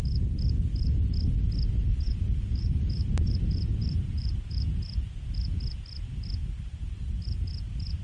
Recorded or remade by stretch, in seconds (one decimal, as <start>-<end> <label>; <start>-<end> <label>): 0.0-1.8 recorded; 1.8-4.8 remade; 4.8-8.0 recorded